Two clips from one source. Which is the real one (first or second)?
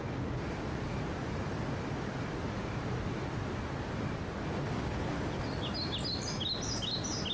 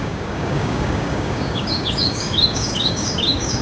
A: first